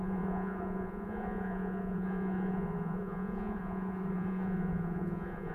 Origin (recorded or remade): remade